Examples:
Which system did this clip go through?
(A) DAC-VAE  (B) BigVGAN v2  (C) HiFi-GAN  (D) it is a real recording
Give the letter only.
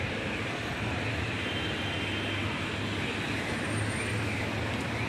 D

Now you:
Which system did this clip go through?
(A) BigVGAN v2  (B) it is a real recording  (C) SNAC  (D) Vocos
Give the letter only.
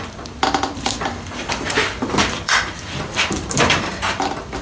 A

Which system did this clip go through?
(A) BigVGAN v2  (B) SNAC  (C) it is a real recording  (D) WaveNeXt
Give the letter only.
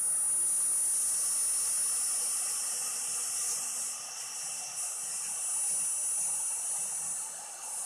C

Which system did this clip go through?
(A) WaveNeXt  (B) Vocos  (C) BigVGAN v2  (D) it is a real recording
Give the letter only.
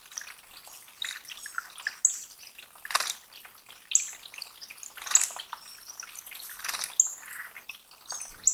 D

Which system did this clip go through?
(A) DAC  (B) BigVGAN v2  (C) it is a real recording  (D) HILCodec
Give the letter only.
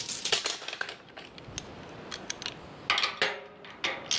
C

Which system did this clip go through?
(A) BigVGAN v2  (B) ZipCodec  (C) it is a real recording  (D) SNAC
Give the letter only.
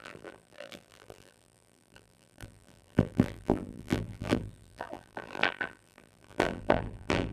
A